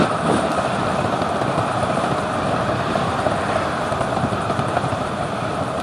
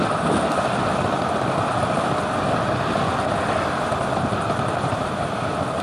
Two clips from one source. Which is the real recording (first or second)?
second